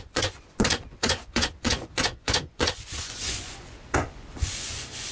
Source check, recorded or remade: remade